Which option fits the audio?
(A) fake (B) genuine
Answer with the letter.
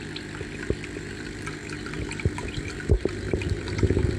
B